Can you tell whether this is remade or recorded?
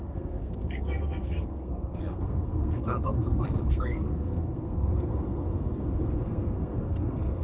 remade